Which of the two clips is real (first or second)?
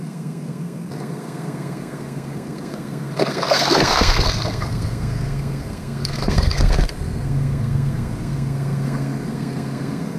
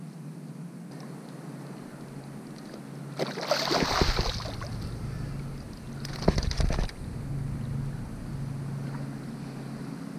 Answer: second